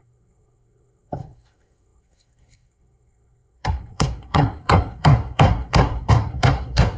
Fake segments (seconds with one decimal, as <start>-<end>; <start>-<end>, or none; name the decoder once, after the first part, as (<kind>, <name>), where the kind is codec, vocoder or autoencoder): 0.0-7.0 (codec, SNAC)